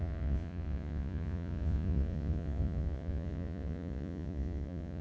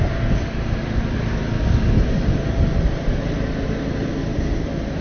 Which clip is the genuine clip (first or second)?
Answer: second